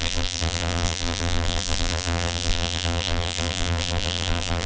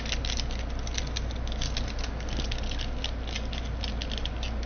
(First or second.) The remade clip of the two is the first